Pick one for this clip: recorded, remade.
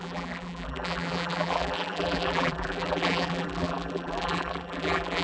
remade